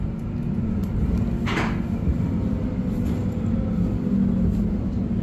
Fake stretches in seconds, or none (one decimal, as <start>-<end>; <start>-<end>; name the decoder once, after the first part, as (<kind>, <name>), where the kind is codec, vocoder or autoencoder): none